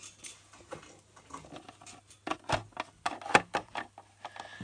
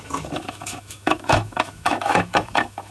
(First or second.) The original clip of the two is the first